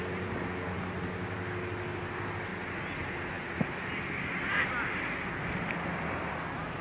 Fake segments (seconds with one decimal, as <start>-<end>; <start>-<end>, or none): none